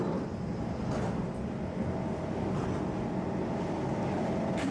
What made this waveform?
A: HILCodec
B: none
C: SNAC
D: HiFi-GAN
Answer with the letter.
B